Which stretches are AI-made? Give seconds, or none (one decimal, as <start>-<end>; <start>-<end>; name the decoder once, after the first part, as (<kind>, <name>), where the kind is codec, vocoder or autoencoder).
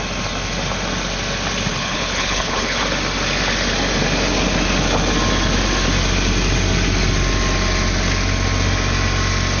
1.7-2.8 (codec, HILCodec)